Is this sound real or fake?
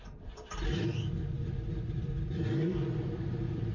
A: fake